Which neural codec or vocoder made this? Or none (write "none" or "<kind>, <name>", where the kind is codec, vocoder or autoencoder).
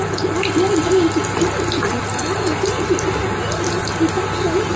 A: none